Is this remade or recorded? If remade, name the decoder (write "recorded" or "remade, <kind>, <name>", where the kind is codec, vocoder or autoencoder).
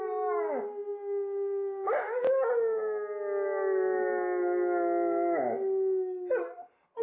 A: recorded